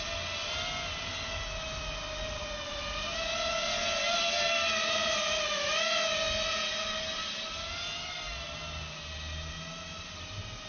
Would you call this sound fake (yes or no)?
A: no